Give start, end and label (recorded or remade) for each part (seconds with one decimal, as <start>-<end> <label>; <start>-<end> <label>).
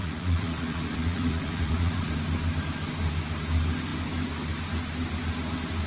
0.0-2.1 remade; 2.1-5.9 recorded